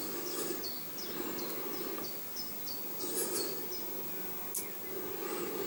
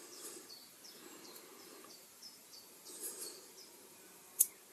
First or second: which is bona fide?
first